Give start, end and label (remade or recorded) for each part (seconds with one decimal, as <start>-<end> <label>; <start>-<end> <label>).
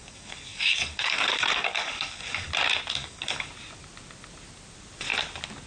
0.0-2.5 remade; 2.5-3.0 recorded; 3.0-3.5 remade; 3.5-5.7 recorded